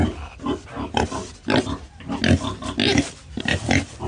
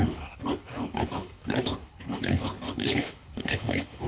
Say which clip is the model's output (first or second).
second